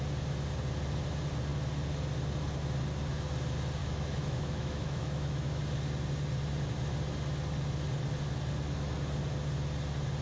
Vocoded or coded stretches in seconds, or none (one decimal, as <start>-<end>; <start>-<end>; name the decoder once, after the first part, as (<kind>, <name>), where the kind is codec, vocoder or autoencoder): 3.8-5.6 (autoencoder, DAC-VAE)